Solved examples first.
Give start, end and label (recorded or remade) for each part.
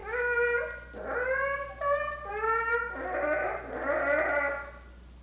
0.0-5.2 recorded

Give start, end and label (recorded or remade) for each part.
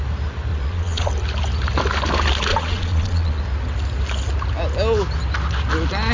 0.0-0.5 recorded; 0.5-1.1 remade; 1.1-2.5 recorded; 2.5-3.4 remade; 3.4-6.1 recorded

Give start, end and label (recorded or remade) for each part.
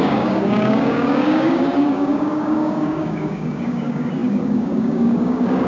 0.0-5.7 remade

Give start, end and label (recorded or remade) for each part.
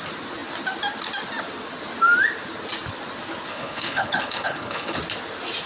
0.0-3.5 recorded; 3.5-5.0 remade; 5.0-5.7 recorded